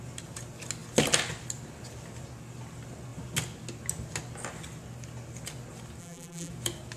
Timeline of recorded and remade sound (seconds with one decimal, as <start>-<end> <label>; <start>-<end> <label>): 0.0-6.0 recorded; 6.0-6.5 remade; 6.5-7.0 recorded